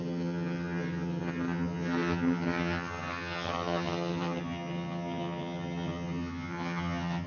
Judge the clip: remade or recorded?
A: remade